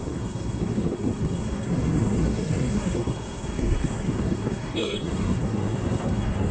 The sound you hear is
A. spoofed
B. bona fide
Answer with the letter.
A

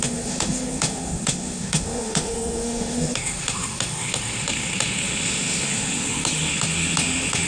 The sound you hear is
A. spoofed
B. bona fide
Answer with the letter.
A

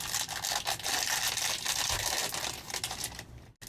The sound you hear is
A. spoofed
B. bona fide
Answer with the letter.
B